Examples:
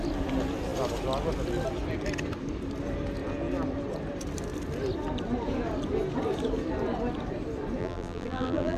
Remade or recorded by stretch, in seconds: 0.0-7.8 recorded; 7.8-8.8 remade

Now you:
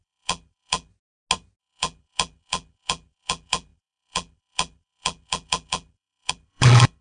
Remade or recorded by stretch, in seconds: 0.0-0.9 remade; 0.9-1.6 recorded; 1.6-7.0 remade